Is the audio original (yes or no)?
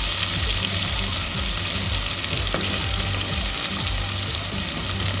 yes